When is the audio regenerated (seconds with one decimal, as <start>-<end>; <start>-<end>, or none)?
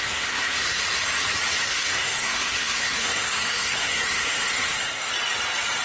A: 0.0-0.8; 1.6-5.1